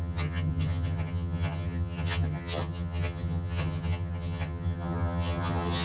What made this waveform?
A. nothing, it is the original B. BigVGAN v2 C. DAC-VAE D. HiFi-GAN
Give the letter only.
D